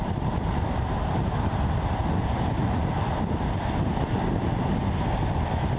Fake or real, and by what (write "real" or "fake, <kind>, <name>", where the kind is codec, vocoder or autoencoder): real